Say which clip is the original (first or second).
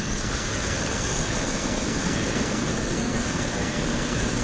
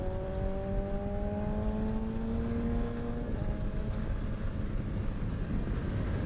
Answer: second